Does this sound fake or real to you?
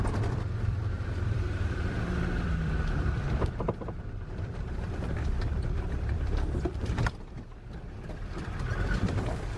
fake